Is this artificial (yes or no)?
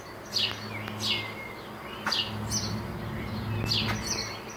no